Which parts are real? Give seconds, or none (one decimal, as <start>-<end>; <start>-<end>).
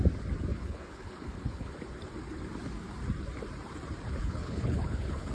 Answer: 0.0-0.5; 1.7-4.2